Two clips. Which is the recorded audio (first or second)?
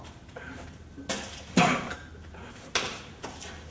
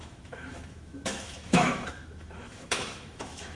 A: first